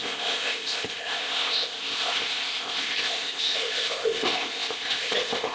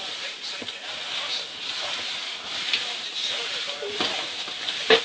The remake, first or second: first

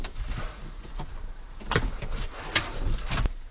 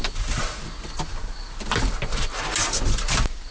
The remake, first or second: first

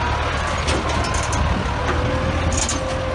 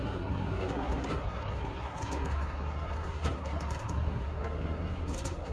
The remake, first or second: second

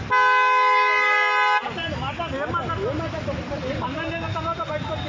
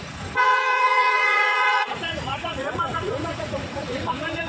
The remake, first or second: second